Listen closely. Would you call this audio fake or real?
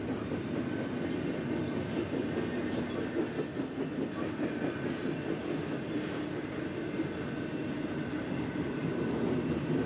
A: real